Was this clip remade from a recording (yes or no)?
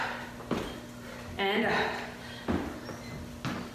no